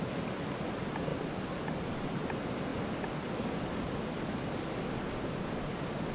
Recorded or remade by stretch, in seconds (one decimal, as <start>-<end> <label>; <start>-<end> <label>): 0.0-1.1 remade; 1.1-2.1 recorded; 2.1-2.7 remade; 2.7-5.5 recorded; 5.5-6.1 remade